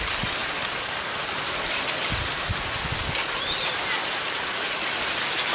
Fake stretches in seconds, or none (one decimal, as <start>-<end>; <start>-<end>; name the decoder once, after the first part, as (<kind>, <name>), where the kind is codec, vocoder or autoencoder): none